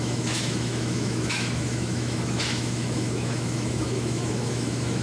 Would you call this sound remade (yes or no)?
yes